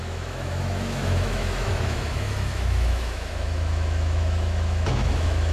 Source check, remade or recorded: remade